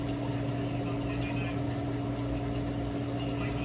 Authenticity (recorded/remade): recorded